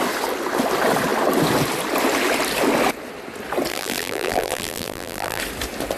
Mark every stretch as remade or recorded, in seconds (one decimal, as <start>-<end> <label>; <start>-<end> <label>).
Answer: 0.0-3.7 recorded; 3.7-5.4 remade; 5.4-6.0 recorded

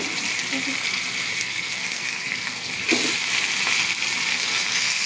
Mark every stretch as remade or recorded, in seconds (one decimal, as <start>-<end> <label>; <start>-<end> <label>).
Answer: 0.0-1.3 recorded; 1.3-2.7 remade; 2.7-4.3 recorded; 4.3-5.1 remade